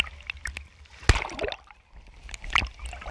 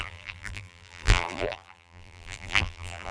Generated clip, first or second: second